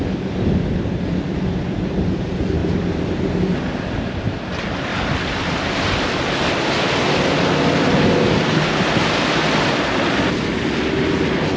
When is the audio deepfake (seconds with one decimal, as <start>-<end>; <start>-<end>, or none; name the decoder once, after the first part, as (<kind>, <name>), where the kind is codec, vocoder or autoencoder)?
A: 2.6-3.4 (vocoder, BigVGAN v2)